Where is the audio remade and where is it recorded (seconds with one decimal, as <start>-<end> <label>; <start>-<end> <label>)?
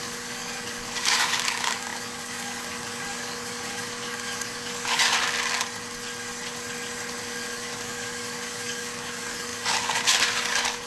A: 0.0-5.0 remade; 5.0-7.2 recorded; 7.2-10.9 remade